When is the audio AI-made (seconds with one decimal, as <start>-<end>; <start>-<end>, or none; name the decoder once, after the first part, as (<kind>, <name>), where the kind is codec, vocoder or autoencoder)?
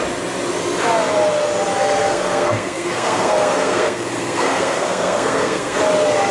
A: 2.0-5.8 (codec, SNAC)